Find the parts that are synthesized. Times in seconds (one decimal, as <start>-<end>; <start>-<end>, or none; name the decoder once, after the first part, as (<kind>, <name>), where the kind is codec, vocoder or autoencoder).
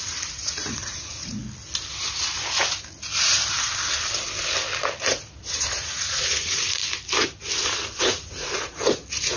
0.0-1.4 (vocoder, Vocos); 5.0-6.8; 8.0-9.4